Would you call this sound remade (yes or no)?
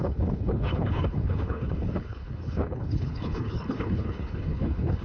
yes